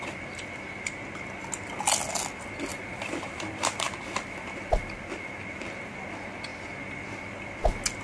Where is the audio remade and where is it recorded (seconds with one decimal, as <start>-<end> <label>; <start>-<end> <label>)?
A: 0.0-2.7 recorded; 2.7-4.0 remade; 4.0-8.0 recorded